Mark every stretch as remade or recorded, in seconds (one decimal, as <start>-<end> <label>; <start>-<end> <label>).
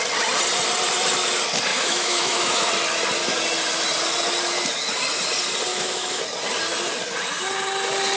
0.0-1.7 recorded; 1.7-2.7 remade; 2.7-5.7 recorded; 5.7-6.2 remade; 6.2-8.2 recorded